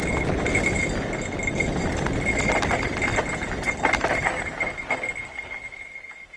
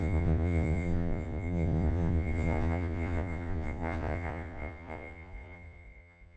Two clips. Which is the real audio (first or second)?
first